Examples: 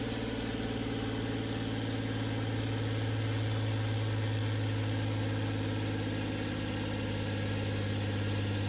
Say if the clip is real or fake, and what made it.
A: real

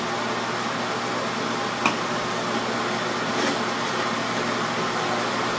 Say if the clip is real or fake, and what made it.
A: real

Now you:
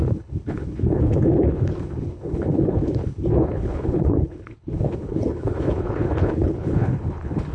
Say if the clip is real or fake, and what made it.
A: fake, codec, HILCodec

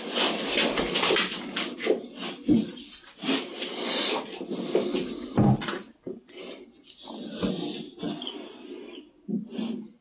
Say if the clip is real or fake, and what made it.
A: real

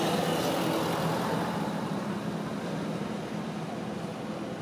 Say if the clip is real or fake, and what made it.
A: real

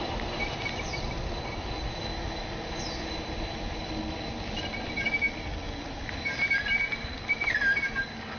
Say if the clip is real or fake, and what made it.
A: real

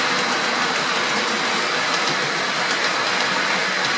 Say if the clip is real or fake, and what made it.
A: real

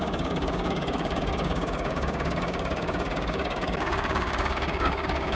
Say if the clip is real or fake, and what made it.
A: fake, codec, DAC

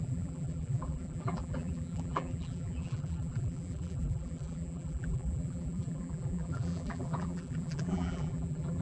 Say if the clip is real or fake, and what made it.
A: fake, vocoder, BigVGAN v2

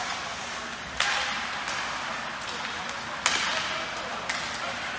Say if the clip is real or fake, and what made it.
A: real